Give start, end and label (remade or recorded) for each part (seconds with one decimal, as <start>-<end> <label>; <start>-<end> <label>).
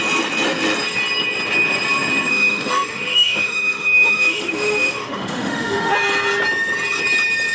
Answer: 0.0-2.3 recorded; 2.3-5.9 remade; 5.9-7.5 recorded